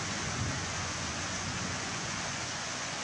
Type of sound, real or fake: fake